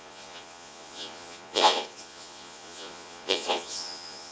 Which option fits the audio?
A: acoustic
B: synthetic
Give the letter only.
B